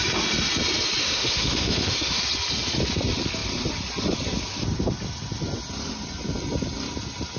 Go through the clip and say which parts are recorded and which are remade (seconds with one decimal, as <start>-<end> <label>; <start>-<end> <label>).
0.0-1.0 recorded; 1.0-2.2 remade; 2.2-7.4 recorded